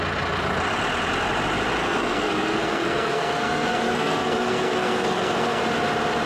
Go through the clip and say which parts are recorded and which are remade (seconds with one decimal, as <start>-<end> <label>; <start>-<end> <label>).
0.0-1.8 recorded; 1.8-5.6 remade; 5.6-6.3 recorded